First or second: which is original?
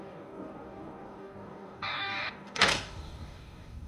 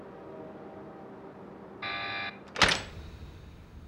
second